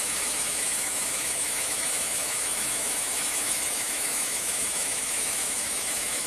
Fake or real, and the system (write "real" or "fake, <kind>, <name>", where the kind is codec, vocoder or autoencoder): fake, autoencoder, DAC-VAE